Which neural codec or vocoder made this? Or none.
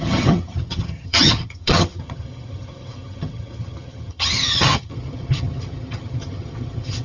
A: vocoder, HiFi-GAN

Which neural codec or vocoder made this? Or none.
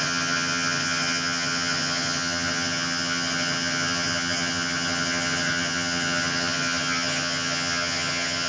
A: vocoder, HiFi-GAN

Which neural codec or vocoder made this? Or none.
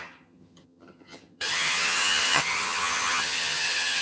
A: vocoder, HiFi-GAN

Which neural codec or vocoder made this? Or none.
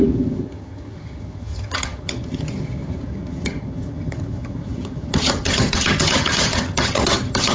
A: vocoder, HiFi-GAN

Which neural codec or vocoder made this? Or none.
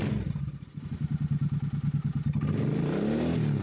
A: none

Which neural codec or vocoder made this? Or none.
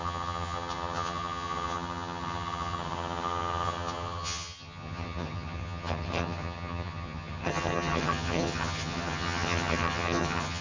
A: vocoder, HiFi-GAN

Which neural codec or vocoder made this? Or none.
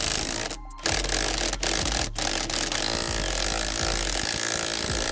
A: none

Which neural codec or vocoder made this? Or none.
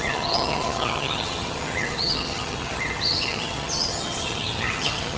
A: vocoder, HiFi-GAN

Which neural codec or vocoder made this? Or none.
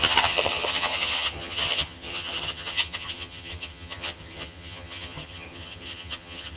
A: vocoder, HiFi-GAN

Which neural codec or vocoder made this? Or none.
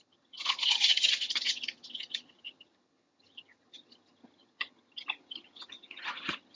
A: vocoder, HiFi-GAN